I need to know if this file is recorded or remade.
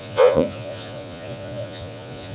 remade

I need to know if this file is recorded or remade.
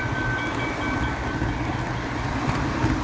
recorded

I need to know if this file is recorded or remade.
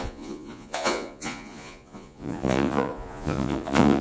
remade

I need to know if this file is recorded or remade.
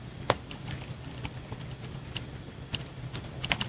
recorded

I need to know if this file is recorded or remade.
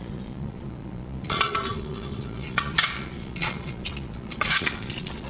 remade